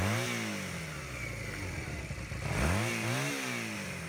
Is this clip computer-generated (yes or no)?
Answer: no